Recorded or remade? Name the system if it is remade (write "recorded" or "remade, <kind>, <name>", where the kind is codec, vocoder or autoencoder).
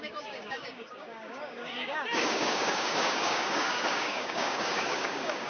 remade, codec, DAC